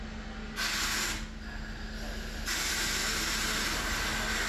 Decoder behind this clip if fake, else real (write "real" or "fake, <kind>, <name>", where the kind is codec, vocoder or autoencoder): real